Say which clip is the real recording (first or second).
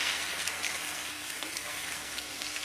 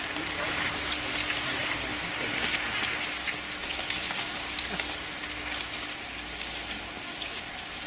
second